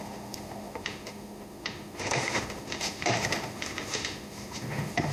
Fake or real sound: fake